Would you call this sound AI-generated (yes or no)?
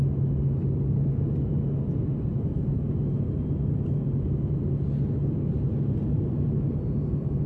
no